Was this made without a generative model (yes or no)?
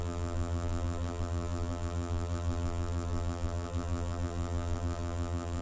no